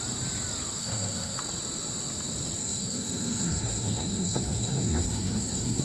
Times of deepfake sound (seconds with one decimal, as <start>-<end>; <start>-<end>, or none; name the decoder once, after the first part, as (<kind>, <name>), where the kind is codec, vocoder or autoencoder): 0.8-1.4 (codec, SNAC); 2.6-5.8